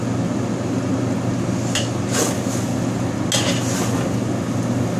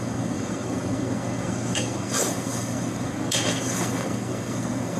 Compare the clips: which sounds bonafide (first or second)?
first